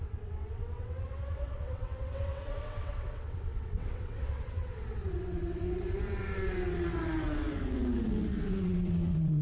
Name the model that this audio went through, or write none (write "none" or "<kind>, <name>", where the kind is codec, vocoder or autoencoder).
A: vocoder, WaveNeXt